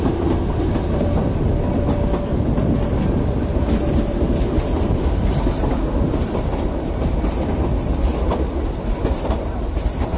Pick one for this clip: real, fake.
real